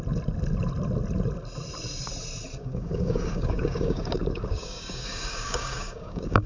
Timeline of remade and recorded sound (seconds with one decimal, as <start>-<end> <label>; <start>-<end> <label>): 0.0-2.6 recorded; 2.6-6.5 remade